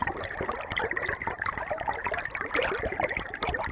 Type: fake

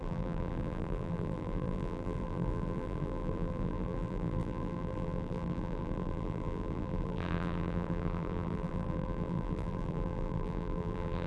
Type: fake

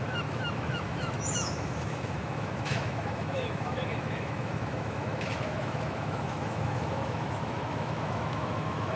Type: fake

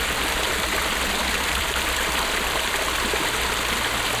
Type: fake